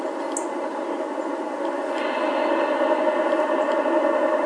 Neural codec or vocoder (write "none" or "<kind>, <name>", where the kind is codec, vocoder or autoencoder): none